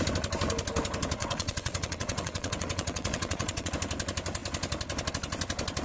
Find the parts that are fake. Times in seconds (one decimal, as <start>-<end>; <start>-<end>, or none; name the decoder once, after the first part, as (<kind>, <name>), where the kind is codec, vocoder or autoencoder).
1.2-3.7 (vocoder, WaveNeXt)